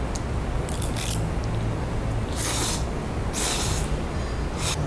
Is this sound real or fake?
real